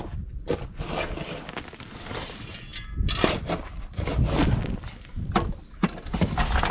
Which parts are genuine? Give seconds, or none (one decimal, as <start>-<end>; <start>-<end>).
0.0-6.7